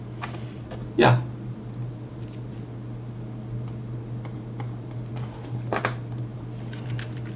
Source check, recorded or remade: recorded